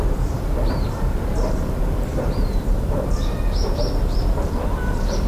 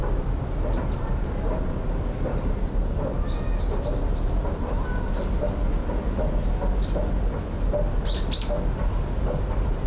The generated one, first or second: first